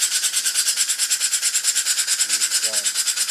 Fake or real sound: real